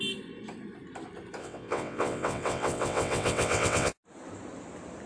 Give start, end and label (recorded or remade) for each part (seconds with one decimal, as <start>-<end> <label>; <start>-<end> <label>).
0.0-1.4 recorded; 1.4-3.9 remade; 3.9-5.1 recorded